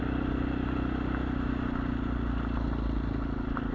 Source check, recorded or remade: recorded